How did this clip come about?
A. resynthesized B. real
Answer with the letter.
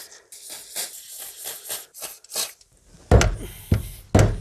B